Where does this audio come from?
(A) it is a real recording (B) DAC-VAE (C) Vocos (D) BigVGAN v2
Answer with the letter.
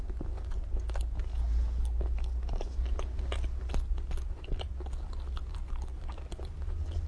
A